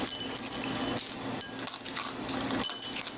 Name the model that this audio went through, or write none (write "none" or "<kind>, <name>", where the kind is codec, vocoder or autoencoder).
none